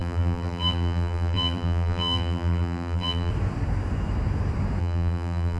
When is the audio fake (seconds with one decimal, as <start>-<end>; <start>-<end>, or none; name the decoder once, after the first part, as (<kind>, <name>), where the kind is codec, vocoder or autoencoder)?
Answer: 0.0-3.3 (vocoder, BigVGAN v2); 4.8-5.6